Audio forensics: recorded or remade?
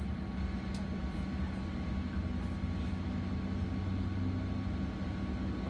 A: recorded